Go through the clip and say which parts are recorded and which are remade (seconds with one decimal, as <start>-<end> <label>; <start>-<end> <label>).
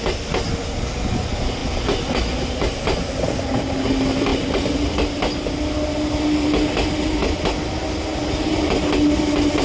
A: 0.0-9.6 recorded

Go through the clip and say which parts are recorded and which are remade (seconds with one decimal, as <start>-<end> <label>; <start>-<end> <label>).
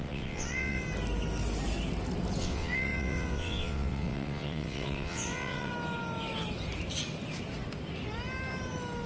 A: 0.0-0.8 remade; 0.8-2.4 recorded; 2.4-5.7 remade; 5.7-9.1 recorded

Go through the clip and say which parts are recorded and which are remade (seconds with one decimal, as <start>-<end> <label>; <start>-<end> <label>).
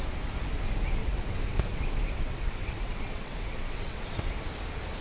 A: 0.0-1.0 recorded; 1.0-4.0 remade; 4.0-5.0 recorded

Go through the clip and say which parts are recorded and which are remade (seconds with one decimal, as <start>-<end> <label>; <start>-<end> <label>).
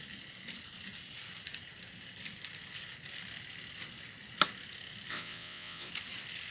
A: 0.0-5.1 recorded; 5.1-5.9 remade; 5.9-6.5 recorded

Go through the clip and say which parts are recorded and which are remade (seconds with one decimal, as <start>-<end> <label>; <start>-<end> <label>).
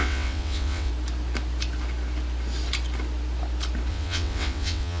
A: 0.0-0.9 remade; 0.9-3.9 recorded; 3.9-5.0 remade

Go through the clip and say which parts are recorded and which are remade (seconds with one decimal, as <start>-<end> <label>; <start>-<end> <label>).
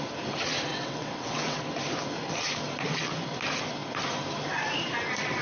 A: 0.0-0.7 recorded; 0.7-1.6 remade; 1.6-5.4 recorded